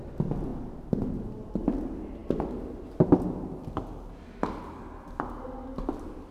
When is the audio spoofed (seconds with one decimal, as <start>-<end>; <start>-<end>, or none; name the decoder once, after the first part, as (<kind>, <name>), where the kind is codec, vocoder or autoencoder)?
none